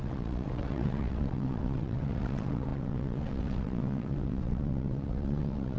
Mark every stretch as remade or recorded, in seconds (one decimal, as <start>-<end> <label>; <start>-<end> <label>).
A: 0.0-5.8 remade